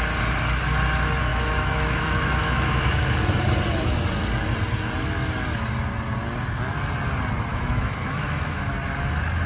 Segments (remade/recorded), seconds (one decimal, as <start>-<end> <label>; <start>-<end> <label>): 0.0-1.3 recorded; 1.3-3.3 remade; 3.3-7.5 recorded; 7.5-8.7 remade; 8.7-9.5 recorded